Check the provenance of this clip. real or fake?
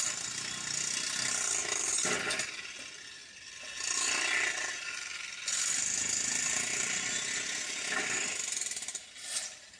real